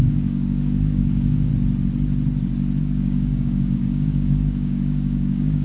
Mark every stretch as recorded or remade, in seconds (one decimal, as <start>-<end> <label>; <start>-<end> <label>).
0.0-1.5 remade; 1.5-2.8 recorded; 2.8-5.6 remade